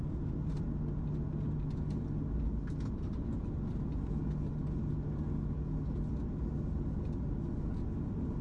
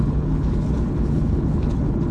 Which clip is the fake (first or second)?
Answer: second